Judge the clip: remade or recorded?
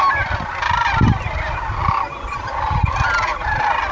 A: recorded